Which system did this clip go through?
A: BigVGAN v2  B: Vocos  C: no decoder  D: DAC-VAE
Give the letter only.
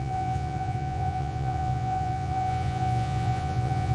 B